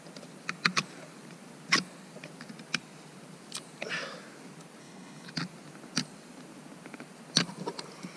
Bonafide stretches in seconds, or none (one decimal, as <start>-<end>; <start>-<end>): 0.0-4.8; 5.3-8.2